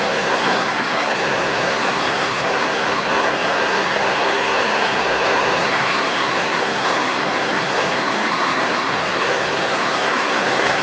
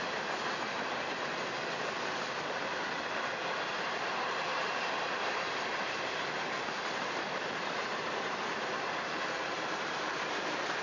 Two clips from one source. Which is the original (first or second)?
second